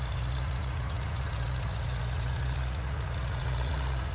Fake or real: fake